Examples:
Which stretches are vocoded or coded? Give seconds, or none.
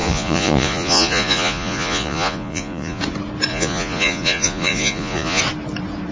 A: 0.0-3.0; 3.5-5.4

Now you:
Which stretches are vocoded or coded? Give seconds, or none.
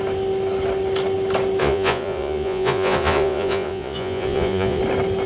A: 1.6-4.8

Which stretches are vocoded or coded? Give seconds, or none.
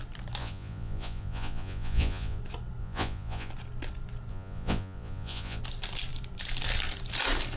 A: 0.4-2.4; 2.8-3.5; 4.3-5.6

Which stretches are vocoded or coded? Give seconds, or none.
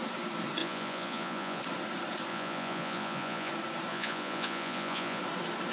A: 0.6-1.6; 2.3-3.5; 3.9-5.2